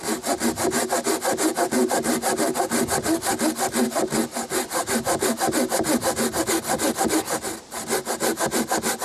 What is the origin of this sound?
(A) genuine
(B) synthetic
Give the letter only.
A